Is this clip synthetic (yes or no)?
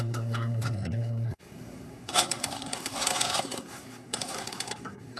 yes